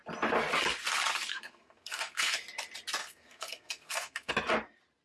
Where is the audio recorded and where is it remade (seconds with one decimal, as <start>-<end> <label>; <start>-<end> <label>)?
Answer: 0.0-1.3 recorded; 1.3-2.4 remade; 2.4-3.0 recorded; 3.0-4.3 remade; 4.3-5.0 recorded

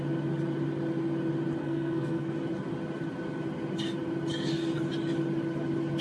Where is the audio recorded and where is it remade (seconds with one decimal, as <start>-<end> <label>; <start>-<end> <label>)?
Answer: 0.0-1.6 recorded; 1.6-2.3 remade; 2.3-6.0 recorded

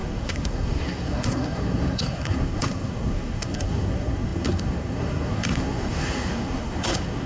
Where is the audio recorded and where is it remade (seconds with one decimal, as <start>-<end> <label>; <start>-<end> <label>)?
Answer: 0.0-7.3 remade

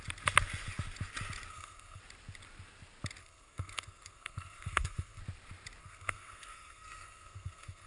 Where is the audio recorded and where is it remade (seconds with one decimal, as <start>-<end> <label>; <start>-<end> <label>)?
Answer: 0.0-1.5 recorded; 1.5-2.0 remade; 2.0-3.2 recorded; 3.2-5.2 remade; 5.2-5.8 recorded; 5.8-7.9 remade

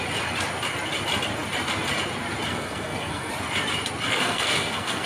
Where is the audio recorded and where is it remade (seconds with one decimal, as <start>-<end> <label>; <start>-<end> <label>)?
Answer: 0.0-2.5 recorded; 2.5-3.3 remade; 3.3-4.1 recorded; 4.1-5.1 remade

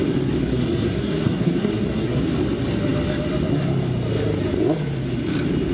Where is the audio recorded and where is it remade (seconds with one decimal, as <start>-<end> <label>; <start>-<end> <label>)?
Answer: 0.0-0.4 recorded; 0.4-2.2 remade; 2.2-5.7 recorded

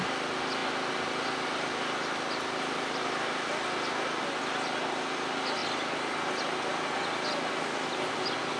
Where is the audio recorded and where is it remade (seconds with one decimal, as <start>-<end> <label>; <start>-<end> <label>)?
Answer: 0.0-8.6 recorded